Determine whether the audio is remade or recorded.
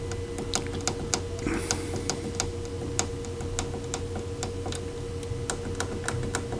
recorded